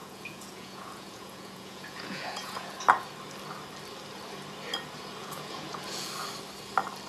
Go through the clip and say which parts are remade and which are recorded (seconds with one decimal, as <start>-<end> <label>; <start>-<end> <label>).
0.0-2.7 remade; 2.7-5.2 recorded; 5.2-6.1 remade; 6.1-7.1 recorded